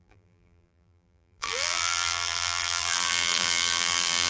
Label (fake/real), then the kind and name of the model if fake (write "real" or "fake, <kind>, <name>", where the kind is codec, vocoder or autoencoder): fake, vocoder, BigVGAN v2